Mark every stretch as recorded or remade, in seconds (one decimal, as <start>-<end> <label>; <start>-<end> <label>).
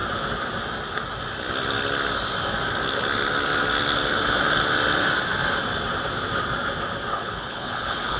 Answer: 0.0-7.1 recorded; 7.1-8.2 remade